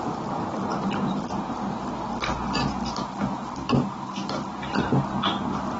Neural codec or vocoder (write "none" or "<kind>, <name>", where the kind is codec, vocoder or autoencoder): none